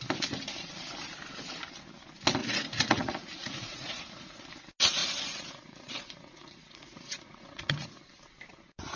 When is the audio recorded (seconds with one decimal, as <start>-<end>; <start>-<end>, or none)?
0.0-2.4; 4.4-5.0; 8.0-9.0

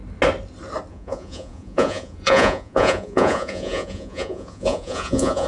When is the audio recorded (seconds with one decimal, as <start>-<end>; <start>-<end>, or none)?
0.0-0.9

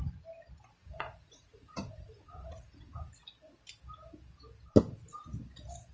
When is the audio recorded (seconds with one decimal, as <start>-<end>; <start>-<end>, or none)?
0.0-0.8; 3.1-5.9

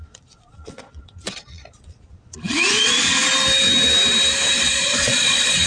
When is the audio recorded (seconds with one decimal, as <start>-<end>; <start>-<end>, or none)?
3.2-4.6

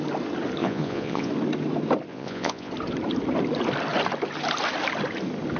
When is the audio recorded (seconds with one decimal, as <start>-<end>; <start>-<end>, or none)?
0.0-0.6; 1.3-2.1; 2.7-5.6

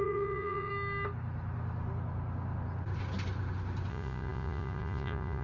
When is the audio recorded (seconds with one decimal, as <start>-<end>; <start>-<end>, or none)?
0.7-3.9

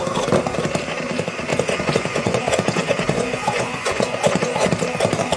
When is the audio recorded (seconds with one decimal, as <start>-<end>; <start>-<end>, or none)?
0.0-1.5; 4.7-5.4

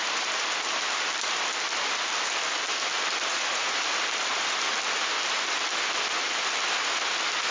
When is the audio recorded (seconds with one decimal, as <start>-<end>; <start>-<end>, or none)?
0.0-3.3; 3.8-7.5